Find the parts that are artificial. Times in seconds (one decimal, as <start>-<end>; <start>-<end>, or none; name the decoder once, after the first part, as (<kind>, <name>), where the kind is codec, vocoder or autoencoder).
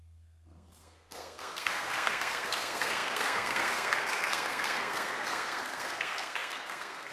0.0-7.1 (codec, SNAC)